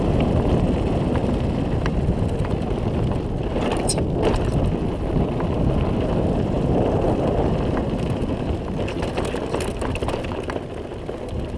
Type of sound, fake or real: real